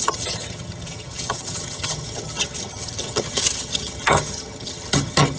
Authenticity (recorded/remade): remade